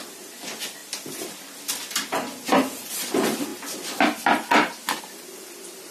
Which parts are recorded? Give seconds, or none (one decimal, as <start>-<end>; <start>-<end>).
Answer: 0.0-5.9